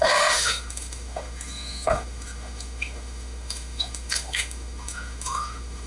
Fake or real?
fake